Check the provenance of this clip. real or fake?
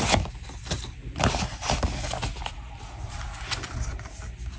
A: real